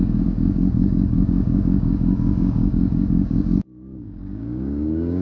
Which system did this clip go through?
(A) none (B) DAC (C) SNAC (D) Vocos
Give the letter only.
B